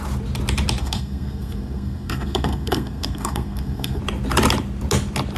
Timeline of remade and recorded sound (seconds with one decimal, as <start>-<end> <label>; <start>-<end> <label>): 0.0-0.8 recorded; 0.8-4.0 remade; 4.0-5.4 recorded